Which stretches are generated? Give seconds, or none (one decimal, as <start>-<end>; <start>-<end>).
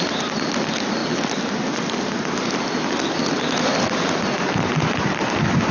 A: none